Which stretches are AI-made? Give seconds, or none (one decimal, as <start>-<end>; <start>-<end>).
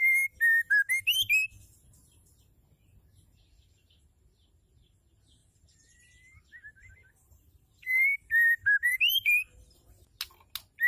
5.4-9.9